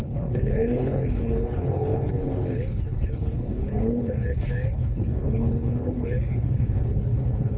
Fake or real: fake